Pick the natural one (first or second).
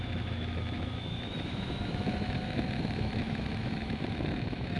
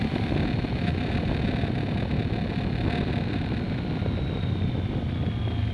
second